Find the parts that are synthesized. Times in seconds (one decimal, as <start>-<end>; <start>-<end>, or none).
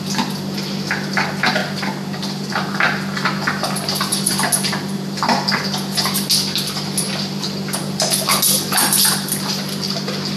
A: none